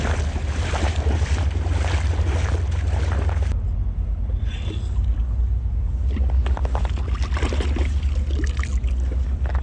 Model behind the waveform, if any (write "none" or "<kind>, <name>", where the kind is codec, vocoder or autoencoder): none